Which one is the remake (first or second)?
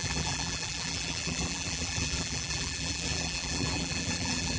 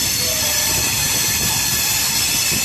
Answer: first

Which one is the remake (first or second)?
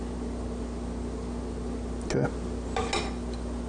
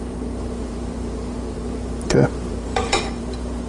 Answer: second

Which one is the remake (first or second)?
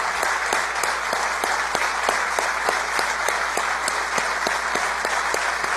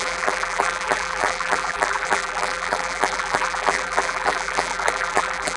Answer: second